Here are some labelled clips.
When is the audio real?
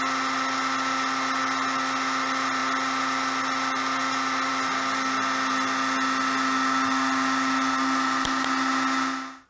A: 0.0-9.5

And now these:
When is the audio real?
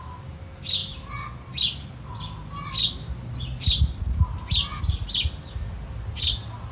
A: 0.0-6.7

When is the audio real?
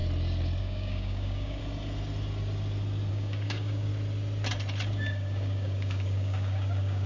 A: 0.0-0.6; 1.6-3.1; 3.9-4.9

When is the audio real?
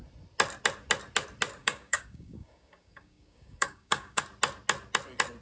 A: 0.0-1.6; 4.2-5.4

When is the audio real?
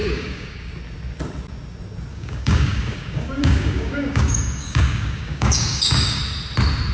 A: 0.7-2.1; 6.2-6.9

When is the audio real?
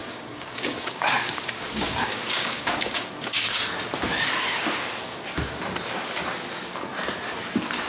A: 3.6-7.9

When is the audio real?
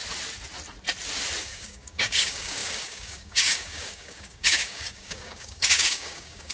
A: 0.0-1.4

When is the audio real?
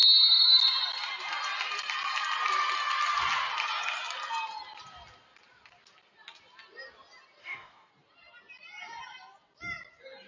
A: 0.0-7.4; 7.9-10.3